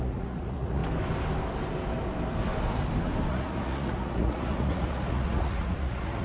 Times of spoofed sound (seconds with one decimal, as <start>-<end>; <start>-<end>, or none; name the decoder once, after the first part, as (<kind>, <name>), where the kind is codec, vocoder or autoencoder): 0.0-0.8 (vocoder, Vocos); 3.3-6.2